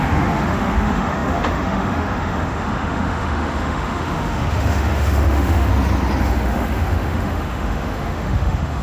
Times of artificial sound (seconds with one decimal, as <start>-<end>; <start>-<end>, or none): 0.0-5.7; 6.2-8.8